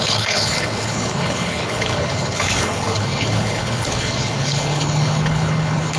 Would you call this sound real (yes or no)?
no